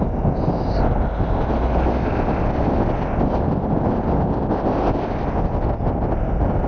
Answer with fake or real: real